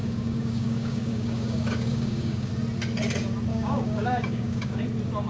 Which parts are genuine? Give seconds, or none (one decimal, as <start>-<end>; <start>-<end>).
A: 2.5-3.5; 4.8-5.3